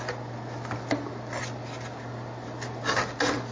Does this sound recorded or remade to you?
recorded